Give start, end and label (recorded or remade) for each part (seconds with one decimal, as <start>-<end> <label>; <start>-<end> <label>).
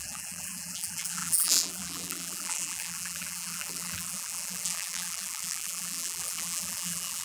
0.0-7.2 remade